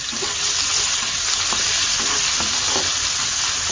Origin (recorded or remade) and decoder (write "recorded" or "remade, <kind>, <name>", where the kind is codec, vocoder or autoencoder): recorded